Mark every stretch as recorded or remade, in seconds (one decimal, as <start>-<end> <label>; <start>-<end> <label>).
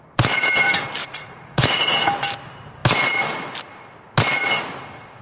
0.0-1.0 recorded; 1.0-1.8 remade; 1.8-5.2 recorded